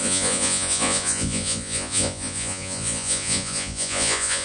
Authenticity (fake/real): fake